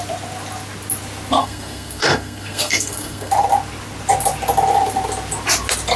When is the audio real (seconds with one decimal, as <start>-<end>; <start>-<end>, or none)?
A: 0.0-1.4; 3.3-6.0